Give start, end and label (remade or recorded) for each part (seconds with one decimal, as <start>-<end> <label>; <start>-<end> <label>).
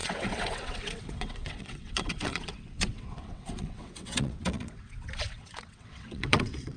0.0-6.8 remade